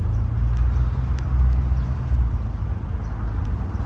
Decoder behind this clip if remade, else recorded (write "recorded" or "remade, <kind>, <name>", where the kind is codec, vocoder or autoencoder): recorded